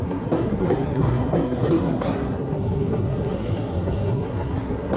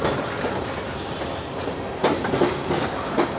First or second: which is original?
second